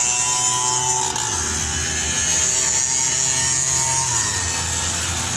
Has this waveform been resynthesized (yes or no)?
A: no